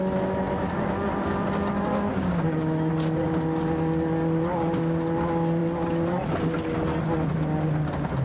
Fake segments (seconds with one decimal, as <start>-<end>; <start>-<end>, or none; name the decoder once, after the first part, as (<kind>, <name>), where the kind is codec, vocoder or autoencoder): 2.1-2.9 (codec, DAC)